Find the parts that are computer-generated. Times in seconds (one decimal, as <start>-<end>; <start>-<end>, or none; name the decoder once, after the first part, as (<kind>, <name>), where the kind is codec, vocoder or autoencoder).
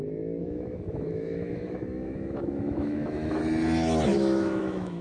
0.4-3.4 (autoencoder, DAC-VAE); 4.1-5.0